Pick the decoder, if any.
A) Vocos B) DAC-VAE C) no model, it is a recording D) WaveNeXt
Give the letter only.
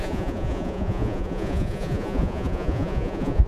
A